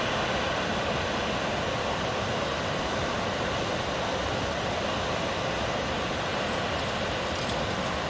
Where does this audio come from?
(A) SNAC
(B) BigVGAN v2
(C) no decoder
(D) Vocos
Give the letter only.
C